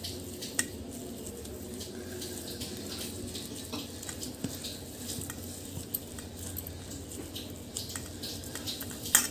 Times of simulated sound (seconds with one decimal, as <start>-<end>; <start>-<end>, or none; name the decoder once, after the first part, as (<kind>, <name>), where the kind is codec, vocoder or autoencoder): none